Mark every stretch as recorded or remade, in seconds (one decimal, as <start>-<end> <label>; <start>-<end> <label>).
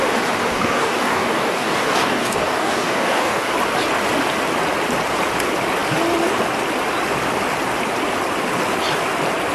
0.0-0.5 recorded; 0.5-3.5 remade; 3.5-9.5 recorded